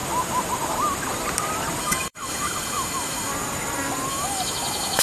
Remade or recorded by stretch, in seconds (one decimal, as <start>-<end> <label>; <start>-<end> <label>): 0.0-1.8 recorded; 1.8-3.3 remade; 3.3-4.1 recorded; 4.1-5.0 remade